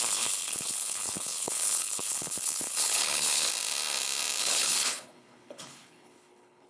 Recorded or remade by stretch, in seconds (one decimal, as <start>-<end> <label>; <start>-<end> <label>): 0.0-3.5 remade; 3.5-4.4 recorded; 4.4-6.7 remade